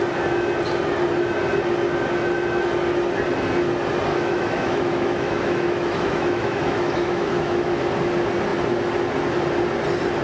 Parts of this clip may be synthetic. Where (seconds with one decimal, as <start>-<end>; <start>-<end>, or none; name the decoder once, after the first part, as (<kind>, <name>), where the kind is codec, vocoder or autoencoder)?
4.1-7.8 (autoencoder, DAC-VAE)